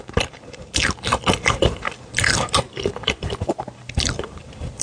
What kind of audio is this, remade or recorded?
remade